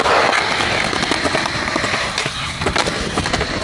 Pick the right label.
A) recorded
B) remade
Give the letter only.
A